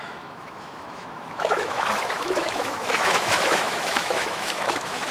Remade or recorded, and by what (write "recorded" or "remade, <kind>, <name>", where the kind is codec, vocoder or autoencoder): remade, autoencoder, DAC-VAE